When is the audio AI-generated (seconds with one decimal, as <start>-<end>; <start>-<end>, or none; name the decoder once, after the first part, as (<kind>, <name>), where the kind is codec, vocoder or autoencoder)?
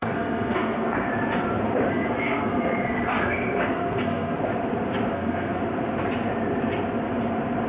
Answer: 0.0-1.1 (codec, SNAC); 1.9-4.4; 5.1-5.6